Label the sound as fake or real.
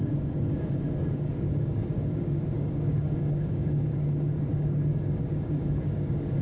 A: fake